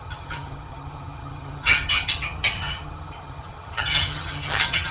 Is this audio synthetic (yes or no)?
yes